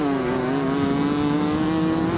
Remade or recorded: recorded